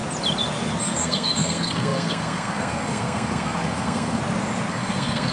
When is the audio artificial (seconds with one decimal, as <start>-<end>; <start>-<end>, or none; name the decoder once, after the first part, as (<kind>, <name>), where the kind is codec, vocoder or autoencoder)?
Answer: 0.8-4.2 (codec, SNAC); 4.7-5.3